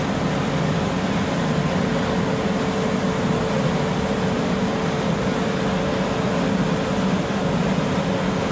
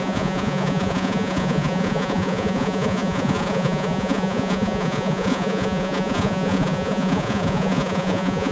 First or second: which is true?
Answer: first